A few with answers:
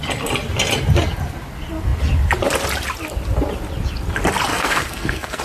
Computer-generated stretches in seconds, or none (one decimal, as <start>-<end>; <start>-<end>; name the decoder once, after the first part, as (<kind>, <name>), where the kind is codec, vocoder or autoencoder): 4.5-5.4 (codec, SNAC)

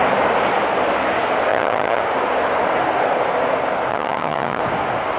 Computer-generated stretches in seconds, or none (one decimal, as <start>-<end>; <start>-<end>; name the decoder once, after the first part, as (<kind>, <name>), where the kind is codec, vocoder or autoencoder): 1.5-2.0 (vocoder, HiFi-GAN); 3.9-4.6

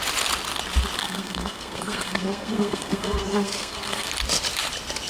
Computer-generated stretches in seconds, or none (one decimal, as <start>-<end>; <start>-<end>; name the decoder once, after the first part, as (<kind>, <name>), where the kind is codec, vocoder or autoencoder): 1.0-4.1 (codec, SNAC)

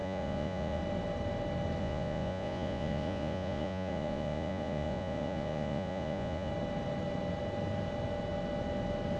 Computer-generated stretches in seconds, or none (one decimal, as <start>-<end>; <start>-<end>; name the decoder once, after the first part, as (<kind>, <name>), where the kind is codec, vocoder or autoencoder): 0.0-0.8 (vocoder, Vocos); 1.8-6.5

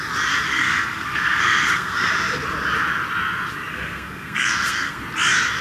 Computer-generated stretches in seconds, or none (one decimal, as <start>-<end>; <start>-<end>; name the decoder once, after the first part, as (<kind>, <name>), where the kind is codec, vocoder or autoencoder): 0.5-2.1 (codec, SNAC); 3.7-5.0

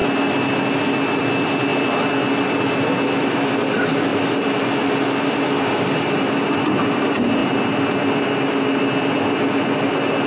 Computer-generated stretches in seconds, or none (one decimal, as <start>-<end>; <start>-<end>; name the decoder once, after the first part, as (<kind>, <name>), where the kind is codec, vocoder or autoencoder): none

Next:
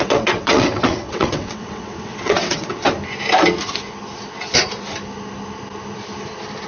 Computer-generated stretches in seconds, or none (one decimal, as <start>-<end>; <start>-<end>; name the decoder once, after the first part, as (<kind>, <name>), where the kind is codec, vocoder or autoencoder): 0.0-2.8 (vocoder, WaveNeXt)

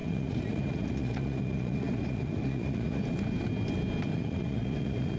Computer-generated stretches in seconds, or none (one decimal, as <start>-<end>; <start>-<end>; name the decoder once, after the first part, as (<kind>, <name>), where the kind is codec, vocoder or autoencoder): 0.0-3.0 (vocoder, Vocos); 4.1-5.2